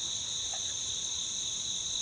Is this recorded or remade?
recorded